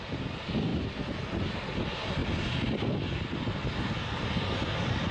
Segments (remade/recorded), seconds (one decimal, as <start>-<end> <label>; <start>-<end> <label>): 0.0-5.1 recorded